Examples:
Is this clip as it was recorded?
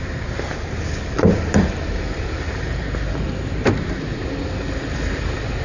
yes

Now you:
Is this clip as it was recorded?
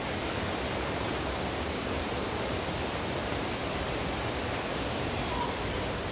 yes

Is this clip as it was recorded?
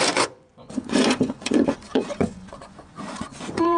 no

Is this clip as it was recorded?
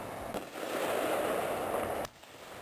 yes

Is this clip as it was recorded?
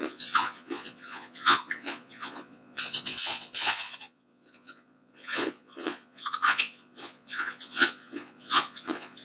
no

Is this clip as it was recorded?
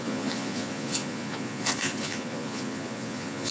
no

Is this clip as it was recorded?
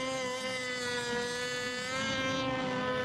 yes